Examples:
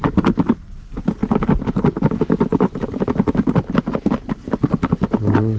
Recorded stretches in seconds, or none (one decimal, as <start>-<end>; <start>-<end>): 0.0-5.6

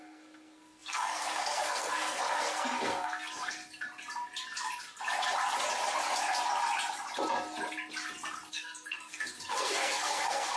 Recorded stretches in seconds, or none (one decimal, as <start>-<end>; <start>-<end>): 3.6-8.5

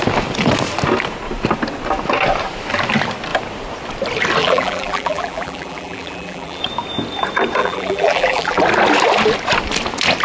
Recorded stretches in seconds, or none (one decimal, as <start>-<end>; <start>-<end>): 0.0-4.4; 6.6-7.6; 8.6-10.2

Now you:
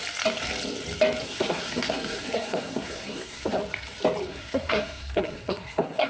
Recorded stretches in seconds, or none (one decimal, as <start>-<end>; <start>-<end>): 0.0-1.2; 3.6-4.3

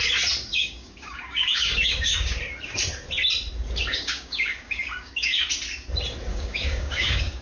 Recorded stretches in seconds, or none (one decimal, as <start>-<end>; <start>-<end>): 0.0-0.5; 2.4-3.9; 5.4-6.3

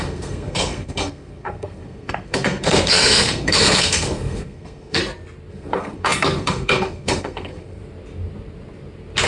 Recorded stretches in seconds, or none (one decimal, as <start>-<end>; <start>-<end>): 5.0-5.5; 7.8-9.3

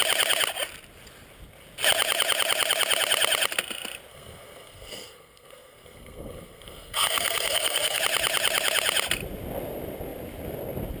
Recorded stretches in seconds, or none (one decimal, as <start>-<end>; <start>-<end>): 0.0-4.1; 8.0-11.0